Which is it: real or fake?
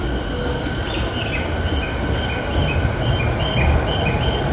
real